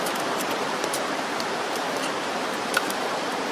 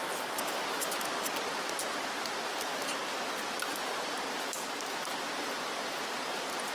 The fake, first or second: first